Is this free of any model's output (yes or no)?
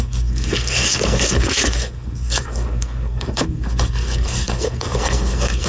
no